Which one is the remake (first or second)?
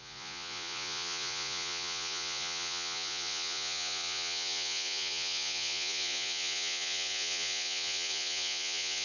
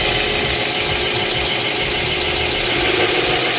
first